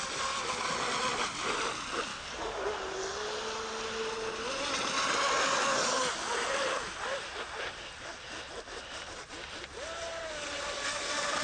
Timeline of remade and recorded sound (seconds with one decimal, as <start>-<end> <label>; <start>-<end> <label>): 0.0-2.1 recorded; 2.1-2.8 remade; 2.8-11.4 recorded